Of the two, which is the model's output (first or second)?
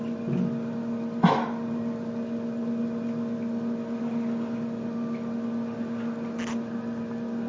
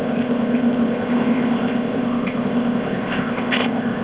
second